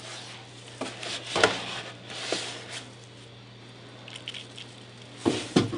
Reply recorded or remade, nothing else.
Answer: recorded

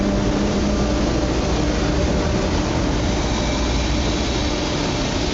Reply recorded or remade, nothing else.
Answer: recorded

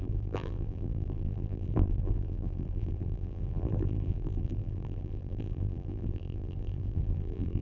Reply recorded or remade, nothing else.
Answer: remade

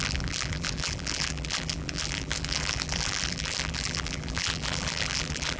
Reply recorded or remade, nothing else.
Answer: remade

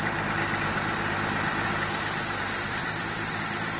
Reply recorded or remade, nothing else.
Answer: remade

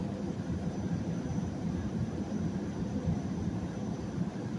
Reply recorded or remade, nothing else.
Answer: remade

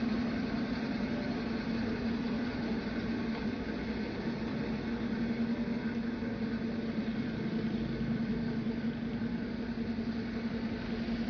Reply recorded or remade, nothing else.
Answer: recorded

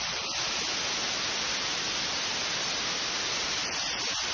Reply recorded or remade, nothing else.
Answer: recorded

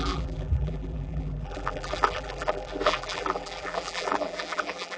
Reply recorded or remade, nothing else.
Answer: remade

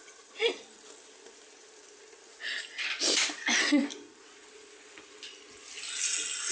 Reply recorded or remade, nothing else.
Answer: recorded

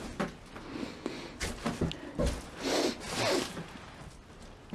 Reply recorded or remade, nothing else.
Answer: recorded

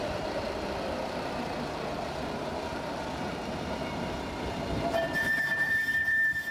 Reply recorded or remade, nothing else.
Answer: remade